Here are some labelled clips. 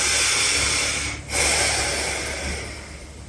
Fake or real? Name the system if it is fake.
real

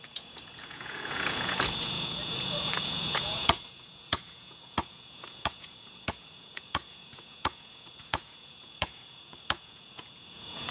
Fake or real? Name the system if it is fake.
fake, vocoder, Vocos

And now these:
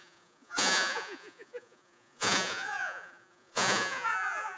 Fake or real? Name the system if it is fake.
fake, vocoder, Vocos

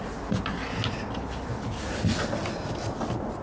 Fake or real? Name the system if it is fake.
real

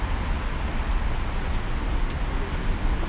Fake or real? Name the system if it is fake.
real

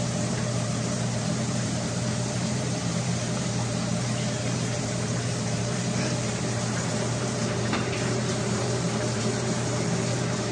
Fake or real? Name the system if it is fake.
fake, vocoder, BigVGAN v2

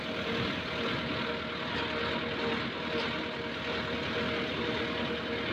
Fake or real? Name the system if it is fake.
real